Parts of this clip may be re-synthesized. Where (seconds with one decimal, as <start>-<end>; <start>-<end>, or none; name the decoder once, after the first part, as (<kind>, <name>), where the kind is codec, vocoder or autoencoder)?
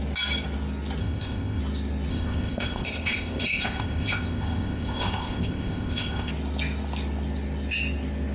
1.0-1.6 (codec, ZipCodec); 2.1-6.3